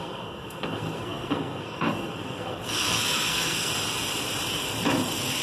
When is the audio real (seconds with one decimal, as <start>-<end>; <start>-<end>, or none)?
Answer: 3.7-5.4